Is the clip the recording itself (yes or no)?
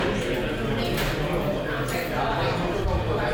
yes